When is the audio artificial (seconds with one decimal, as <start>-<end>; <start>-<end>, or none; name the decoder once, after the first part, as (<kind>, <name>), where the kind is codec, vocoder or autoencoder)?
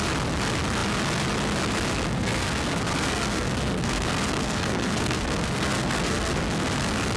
2.1-6.4 (codec, SNAC)